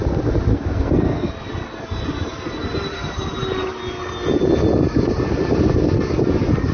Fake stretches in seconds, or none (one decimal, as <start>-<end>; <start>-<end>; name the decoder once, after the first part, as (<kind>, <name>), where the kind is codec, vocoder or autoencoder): 0.5-1.3 (codec, SNAC)